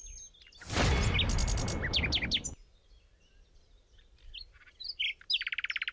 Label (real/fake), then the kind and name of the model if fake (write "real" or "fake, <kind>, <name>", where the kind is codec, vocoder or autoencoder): real